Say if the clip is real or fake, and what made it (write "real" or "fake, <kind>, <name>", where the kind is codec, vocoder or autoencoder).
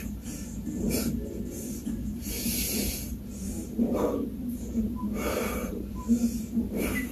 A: fake, vocoder, BigVGAN v2